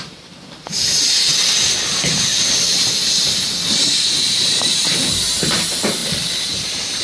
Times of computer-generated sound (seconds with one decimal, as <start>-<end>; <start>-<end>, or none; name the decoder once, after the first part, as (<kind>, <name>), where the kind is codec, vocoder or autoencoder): 0.0-1.3 (vocoder, BigVGAN v2); 1.8-2.3; 3.8-6.0; 6.5-7.0